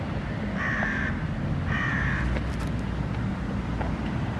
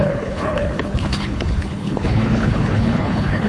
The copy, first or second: second